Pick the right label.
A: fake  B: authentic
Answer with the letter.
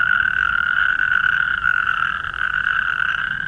B